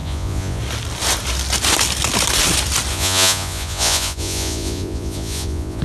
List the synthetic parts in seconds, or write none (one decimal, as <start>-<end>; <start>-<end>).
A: 0.0-0.6; 2.9-5.8